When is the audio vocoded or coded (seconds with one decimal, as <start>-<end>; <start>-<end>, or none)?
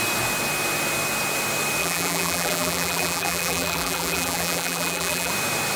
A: 1.8-5.3